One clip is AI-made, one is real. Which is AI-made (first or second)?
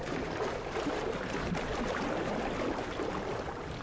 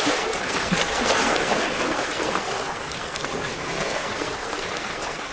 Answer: second